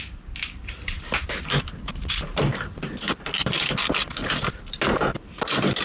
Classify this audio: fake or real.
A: real